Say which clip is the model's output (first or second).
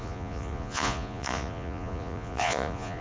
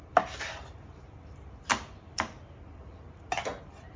first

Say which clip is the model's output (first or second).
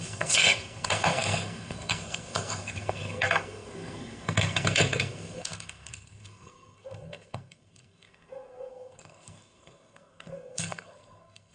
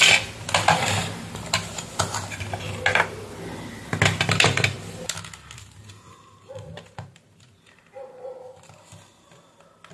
first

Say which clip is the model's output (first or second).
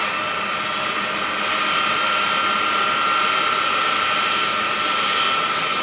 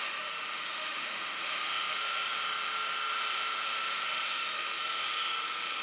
second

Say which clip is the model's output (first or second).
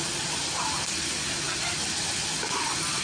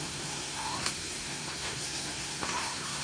second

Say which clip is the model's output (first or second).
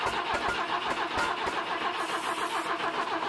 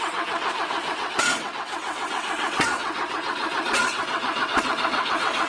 second